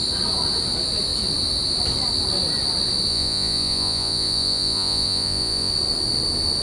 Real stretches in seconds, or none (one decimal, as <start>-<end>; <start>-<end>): 0.0-3.1; 5.7-6.6